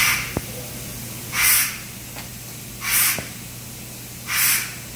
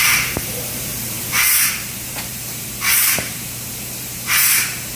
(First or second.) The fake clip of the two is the second